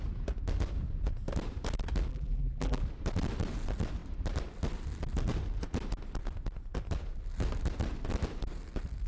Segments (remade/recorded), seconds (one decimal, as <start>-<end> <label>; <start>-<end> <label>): 0.0-2.1 recorded; 2.1-2.8 remade; 2.8-9.1 recorded